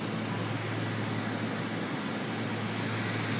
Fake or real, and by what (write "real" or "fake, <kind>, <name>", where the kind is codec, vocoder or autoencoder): real